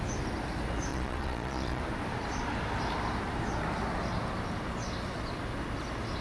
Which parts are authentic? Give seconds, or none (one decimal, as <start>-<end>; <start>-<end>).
0.0-0.9; 1.8-6.2